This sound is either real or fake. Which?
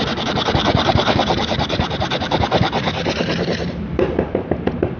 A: fake